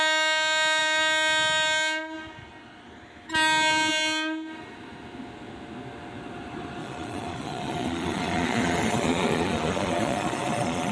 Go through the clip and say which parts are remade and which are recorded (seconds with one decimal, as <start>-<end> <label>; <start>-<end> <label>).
0.0-6.8 recorded; 6.8-10.9 remade